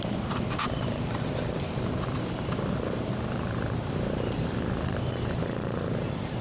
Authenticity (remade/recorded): remade